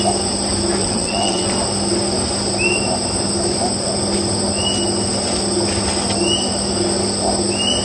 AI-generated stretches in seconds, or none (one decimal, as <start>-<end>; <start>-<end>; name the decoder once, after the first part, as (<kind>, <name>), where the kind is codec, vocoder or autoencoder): 0.8-1.5 (vocoder, WaveNeXt)